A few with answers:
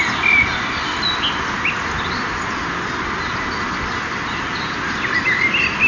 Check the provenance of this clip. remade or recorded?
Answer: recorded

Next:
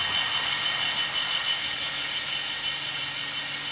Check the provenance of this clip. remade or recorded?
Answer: recorded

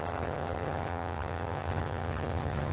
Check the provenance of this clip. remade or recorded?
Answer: remade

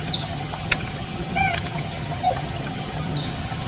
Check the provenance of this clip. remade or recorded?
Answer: remade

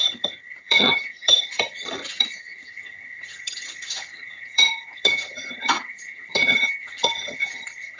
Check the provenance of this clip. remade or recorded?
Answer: remade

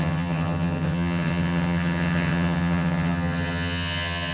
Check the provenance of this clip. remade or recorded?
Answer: remade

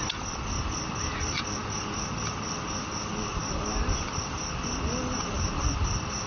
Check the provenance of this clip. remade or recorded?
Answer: recorded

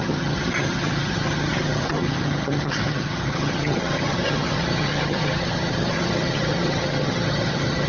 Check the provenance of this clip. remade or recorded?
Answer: remade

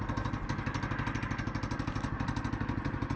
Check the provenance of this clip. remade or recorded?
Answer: recorded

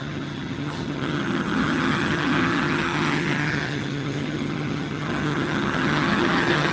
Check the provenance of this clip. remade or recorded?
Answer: remade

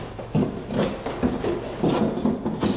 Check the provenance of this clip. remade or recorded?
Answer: recorded